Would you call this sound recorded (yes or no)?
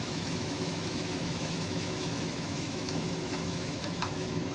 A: no